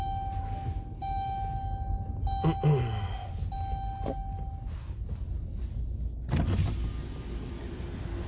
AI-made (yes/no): no